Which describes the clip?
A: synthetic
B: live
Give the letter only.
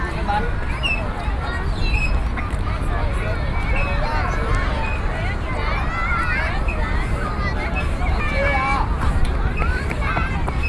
B